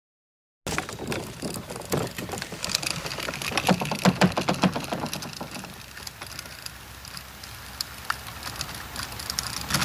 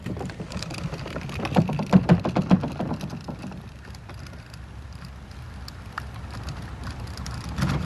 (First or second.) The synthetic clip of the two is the second